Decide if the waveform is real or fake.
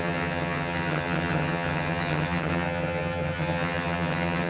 fake